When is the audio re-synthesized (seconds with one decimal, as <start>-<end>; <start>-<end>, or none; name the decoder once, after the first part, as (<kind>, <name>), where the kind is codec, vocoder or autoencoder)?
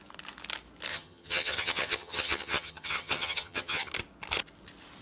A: 0.9-3.9 (vocoder, HiFi-GAN)